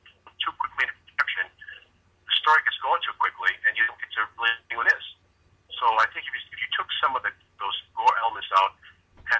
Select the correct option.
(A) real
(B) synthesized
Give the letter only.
A